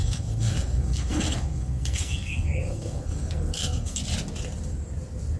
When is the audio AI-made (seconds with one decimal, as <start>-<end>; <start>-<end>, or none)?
0.0-4.0